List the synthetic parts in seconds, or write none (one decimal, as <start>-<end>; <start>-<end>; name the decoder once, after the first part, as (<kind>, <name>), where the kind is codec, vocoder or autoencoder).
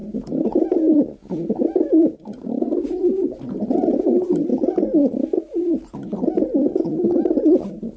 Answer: 0.0-2.2 (vocoder, Vocos)